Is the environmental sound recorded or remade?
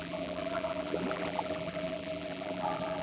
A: remade